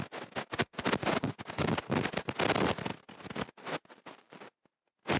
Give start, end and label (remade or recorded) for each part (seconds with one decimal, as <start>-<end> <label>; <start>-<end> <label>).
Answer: 0.0-1.0 recorded; 1.0-1.7 remade; 1.7-5.2 recorded